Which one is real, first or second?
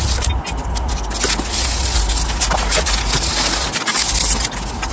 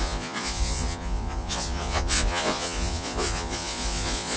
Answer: first